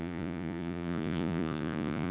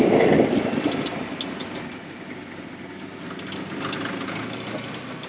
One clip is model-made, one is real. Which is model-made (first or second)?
first